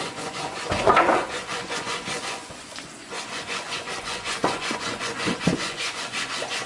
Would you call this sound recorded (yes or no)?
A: no